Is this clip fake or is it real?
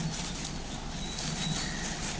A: real